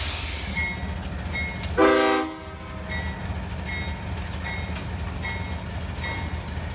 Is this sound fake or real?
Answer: real